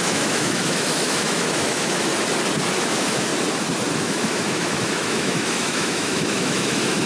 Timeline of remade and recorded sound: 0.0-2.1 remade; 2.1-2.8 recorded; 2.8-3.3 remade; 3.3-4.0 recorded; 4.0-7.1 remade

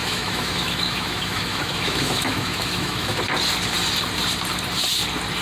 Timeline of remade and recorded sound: 0.0-3.2 remade; 3.2-5.4 recorded

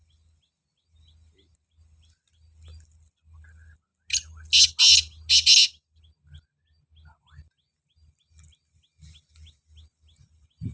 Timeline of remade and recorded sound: 0.0-10.7 recorded